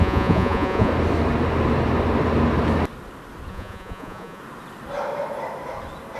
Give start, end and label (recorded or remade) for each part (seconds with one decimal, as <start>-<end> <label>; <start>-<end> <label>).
0.0-0.9 remade; 0.9-3.5 recorded; 3.5-4.4 remade; 4.4-6.2 recorded